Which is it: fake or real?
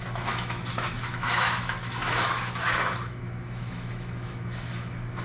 fake